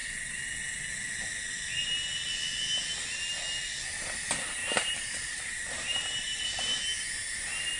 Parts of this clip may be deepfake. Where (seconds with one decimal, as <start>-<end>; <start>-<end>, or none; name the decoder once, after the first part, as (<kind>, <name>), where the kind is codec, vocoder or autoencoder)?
4.6-6.4 (vocoder, BigVGAN v2)